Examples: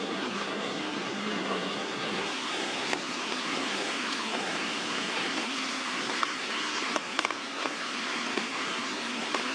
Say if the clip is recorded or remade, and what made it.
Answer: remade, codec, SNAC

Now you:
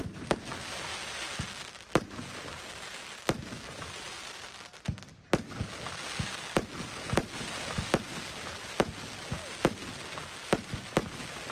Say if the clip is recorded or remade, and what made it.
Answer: recorded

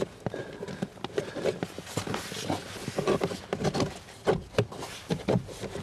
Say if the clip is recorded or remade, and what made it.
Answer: recorded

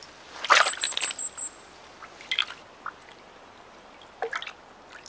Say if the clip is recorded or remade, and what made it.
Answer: recorded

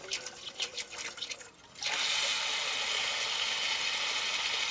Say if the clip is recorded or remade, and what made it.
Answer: recorded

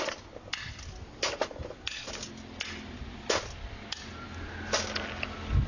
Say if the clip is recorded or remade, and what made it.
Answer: recorded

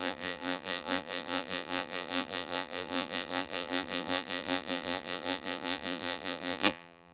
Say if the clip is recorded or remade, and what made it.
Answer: remade, vocoder, BigVGAN v2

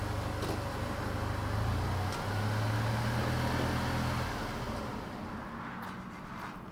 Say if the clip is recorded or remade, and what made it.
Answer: recorded